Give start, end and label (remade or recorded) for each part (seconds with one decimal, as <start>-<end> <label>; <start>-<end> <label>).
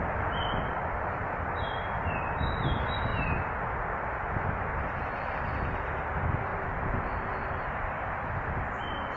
0.0-6.5 recorded; 6.5-8.3 remade; 8.3-9.2 recorded